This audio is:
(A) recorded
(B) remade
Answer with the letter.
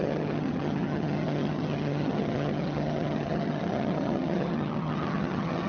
B